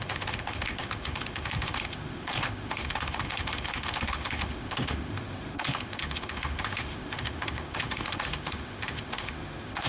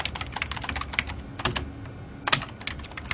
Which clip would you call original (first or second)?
second